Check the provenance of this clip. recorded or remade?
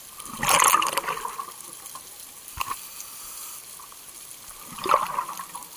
recorded